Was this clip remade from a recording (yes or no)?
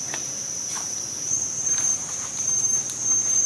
yes